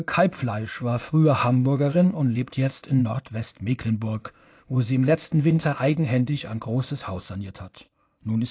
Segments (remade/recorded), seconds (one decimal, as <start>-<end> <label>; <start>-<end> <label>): 0.0-0.8 recorded; 0.8-3.0 remade; 3.0-4.2 recorded; 4.2-7.2 remade; 7.2-8.5 recorded